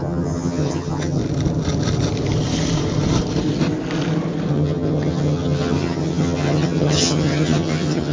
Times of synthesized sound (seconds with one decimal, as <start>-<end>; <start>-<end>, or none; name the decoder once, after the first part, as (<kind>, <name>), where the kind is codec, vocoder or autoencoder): 0.0-1.2 (vocoder, HiFi-GAN); 4.5-8.1